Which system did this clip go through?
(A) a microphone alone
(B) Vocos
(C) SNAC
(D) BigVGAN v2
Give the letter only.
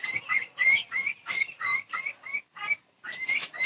D